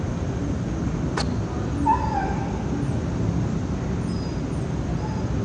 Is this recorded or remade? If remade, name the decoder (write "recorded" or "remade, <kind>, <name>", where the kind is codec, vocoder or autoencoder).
recorded